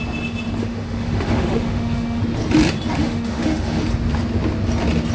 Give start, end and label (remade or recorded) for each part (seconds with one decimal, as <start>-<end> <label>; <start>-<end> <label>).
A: 0.0-0.6 recorded; 0.6-2.2 remade; 2.2-3.0 recorded; 3.0-3.8 remade; 3.8-5.1 recorded